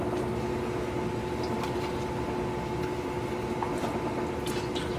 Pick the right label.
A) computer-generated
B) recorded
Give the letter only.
B